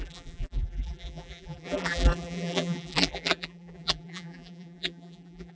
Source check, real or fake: fake